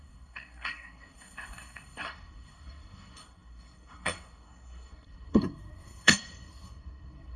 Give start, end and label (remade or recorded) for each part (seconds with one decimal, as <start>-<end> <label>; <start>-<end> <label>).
0.0-7.4 remade